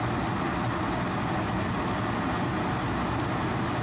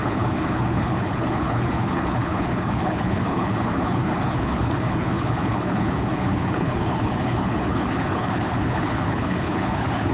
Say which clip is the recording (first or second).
first